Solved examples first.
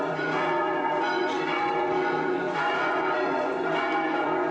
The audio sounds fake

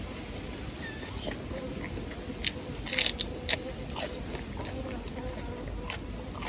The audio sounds real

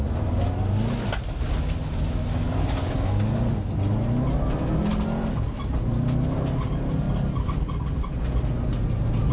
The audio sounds real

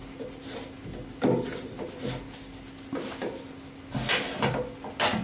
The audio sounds real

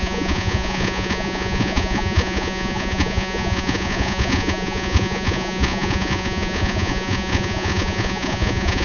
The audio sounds fake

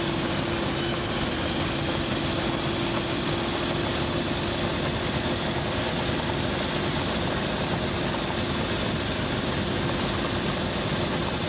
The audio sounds real